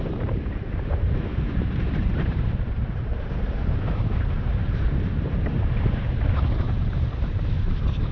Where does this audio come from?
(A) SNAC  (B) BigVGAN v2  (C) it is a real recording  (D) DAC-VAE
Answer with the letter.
B